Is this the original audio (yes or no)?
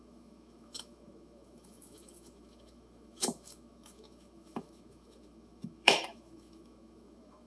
no